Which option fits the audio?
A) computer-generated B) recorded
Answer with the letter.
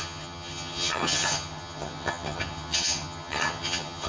A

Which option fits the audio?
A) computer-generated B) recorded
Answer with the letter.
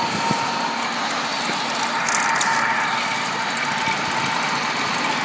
B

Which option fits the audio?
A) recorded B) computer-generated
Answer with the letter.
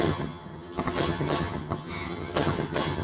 B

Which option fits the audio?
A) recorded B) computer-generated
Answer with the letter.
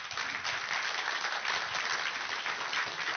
A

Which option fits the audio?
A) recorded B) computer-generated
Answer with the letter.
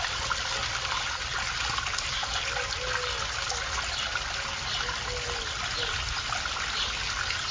A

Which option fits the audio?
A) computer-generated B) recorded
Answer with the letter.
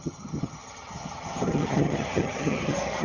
A